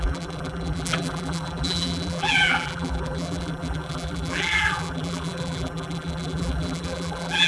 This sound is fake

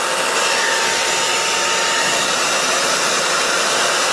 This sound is real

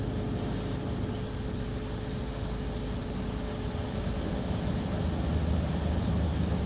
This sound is real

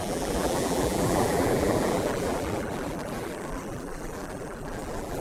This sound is fake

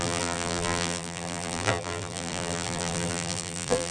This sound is fake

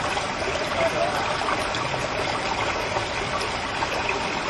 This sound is real